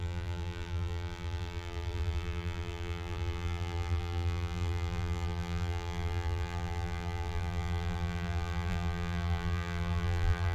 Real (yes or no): no